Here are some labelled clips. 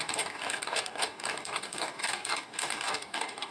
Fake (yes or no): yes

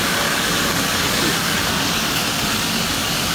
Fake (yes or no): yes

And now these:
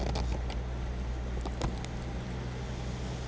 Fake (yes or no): no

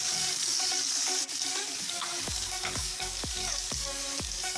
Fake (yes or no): yes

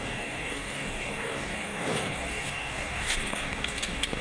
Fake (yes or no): yes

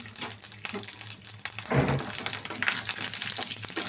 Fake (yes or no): no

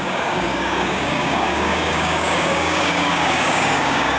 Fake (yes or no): yes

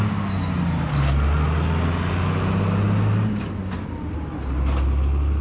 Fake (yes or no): no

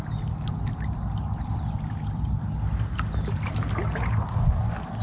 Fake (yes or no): no